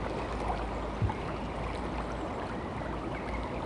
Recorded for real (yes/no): yes